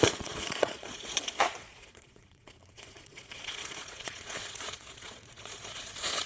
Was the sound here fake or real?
fake